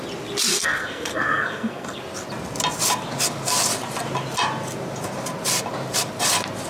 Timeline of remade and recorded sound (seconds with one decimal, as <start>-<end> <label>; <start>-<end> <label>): 0.0-0.5 recorded; 0.5-2.0 remade; 2.0-6.7 recorded